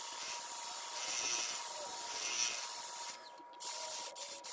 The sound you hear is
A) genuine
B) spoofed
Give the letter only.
A